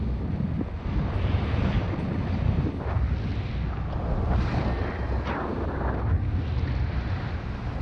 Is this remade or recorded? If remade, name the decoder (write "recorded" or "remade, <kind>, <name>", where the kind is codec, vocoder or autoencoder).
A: recorded